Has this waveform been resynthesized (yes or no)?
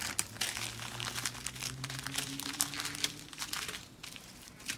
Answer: no